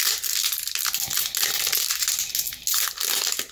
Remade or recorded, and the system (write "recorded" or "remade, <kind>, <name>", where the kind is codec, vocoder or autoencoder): recorded